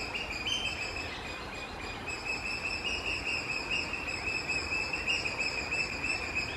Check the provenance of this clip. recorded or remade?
recorded